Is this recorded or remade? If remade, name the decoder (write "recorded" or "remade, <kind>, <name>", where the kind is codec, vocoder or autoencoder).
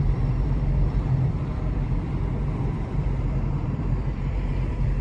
remade, vocoder, BigVGAN v2